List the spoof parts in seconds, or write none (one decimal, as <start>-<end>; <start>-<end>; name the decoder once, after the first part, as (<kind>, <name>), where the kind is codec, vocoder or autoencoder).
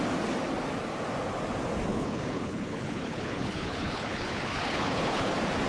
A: 1.9-5.3 (codec, HILCodec)